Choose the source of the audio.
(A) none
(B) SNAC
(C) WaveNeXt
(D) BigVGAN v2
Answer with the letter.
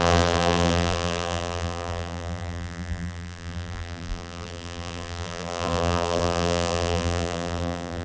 D